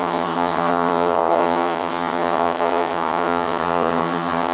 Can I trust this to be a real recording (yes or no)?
no